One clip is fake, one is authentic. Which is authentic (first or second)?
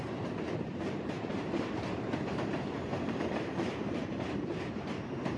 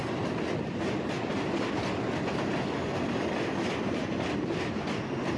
second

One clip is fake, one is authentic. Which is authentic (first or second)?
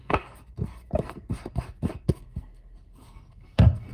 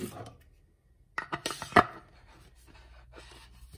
second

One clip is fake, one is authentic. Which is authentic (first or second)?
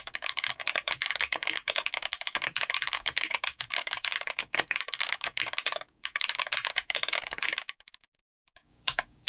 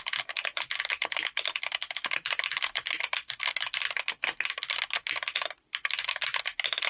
second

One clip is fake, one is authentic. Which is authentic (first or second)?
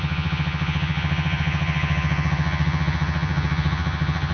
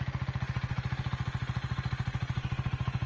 second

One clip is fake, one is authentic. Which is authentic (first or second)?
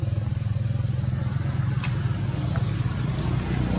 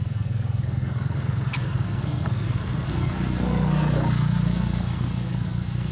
first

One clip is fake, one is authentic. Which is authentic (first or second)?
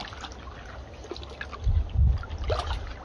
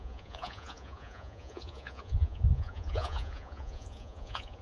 first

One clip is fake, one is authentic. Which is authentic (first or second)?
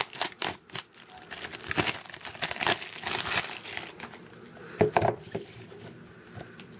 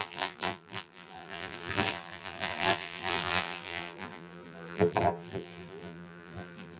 first